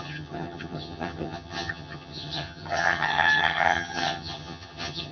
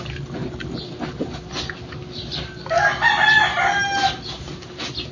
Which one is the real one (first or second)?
second